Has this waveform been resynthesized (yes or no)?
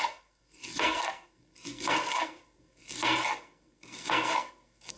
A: yes